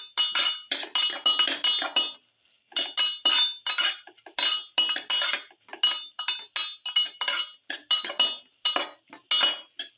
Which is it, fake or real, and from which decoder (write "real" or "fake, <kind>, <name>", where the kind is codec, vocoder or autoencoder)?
real